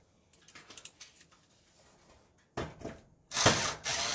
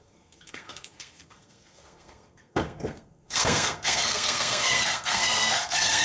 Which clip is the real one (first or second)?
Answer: first